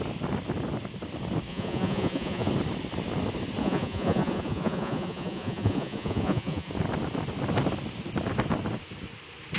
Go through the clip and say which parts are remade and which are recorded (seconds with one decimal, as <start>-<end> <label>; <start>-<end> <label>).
0.0-1.5 recorded; 1.5-2.5 remade; 2.5-3.6 recorded; 3.6-6.7 remade; 6.7-9.6 recorded